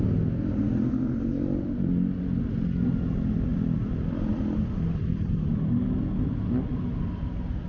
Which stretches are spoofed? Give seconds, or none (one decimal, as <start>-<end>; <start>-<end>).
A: 3.5-5.5

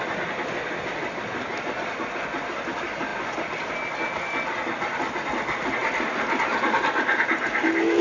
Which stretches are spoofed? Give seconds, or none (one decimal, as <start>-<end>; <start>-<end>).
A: none

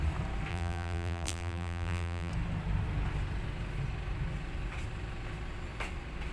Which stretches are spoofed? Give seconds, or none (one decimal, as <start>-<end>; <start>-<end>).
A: 0.5-2.3

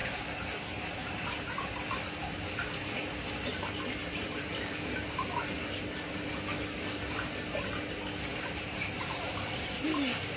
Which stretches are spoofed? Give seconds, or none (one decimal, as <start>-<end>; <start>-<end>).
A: 0.0-1.3; 4.0-4.7; 8.3-9.2

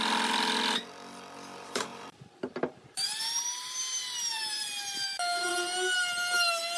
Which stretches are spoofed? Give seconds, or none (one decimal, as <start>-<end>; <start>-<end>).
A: 1.9-3.1; 4.3-5.5

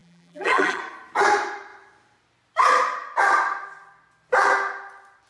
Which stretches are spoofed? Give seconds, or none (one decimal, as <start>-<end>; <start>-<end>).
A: 0.0-0.8

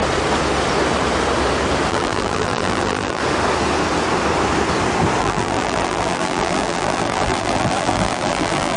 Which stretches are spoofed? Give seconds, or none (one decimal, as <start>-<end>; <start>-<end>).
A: 1.9-3.2; 5.2-8.8